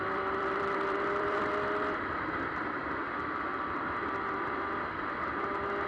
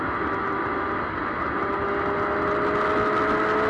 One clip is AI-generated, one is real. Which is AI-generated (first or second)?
first